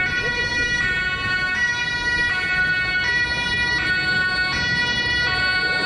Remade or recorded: recorded